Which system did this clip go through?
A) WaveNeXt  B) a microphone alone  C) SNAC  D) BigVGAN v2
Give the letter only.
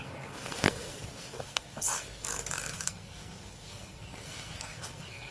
C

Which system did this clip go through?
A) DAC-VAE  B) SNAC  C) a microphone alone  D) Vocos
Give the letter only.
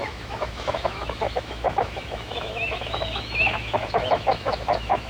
A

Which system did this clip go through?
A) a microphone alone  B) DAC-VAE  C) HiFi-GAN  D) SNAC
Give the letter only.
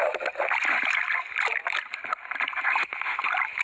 A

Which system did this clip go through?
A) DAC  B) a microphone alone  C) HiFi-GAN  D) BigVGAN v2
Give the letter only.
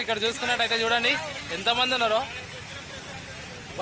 B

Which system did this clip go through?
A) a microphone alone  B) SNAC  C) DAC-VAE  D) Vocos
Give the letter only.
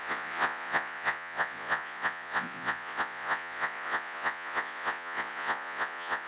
D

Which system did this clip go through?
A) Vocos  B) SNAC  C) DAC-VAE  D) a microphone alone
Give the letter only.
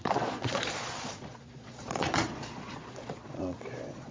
A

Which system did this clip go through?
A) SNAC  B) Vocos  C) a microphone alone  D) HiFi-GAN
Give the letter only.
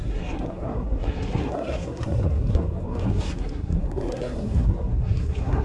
A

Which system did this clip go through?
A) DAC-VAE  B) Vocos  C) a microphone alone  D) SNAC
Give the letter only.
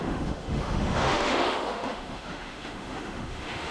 A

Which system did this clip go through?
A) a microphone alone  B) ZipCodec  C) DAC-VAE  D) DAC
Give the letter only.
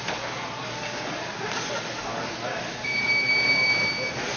A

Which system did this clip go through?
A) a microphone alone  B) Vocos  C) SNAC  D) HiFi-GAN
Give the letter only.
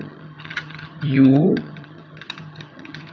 D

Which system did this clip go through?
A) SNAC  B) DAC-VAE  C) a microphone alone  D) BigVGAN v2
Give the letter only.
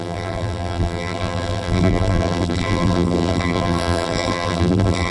D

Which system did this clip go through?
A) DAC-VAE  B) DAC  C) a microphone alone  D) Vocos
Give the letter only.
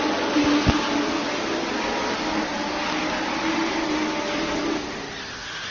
C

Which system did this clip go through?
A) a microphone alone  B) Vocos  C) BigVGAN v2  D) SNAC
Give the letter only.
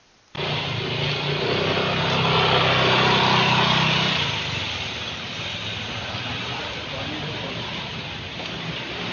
A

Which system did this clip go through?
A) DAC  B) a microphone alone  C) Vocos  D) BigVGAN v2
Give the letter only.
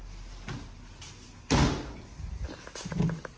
B